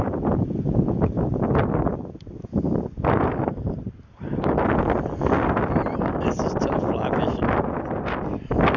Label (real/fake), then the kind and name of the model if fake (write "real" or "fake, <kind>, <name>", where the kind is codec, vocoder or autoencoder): real